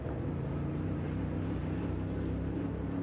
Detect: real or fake real